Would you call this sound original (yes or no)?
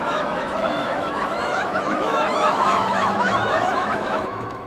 no